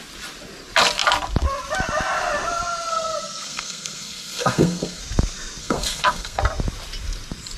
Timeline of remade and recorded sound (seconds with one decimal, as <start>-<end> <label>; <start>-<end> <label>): 0.0-2.9 recorded; 2.9-5.0 remade; 5.0-5.6 recorded; 5.6-6.4 remade; 6.4-7.6 recorded